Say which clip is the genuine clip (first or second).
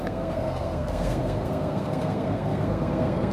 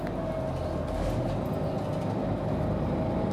second